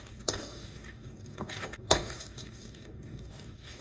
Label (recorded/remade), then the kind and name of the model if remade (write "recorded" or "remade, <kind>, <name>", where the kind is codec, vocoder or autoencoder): remade, codec, DAC